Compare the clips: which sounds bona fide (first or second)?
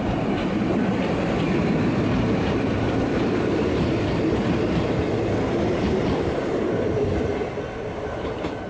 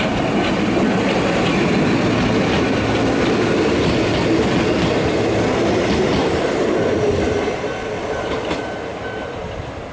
second